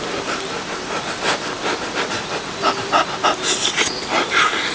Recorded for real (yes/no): yes